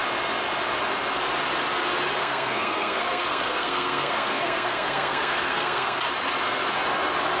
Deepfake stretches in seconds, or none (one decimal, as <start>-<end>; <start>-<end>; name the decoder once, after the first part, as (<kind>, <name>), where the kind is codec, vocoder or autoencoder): 2.2-6.0 (codec, SNAC)